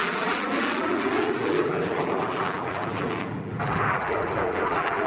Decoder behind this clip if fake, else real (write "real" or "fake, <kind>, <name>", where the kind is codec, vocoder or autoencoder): fake, vocoder, BigVGAN v2